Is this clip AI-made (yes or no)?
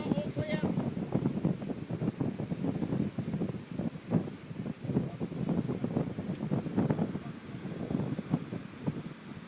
no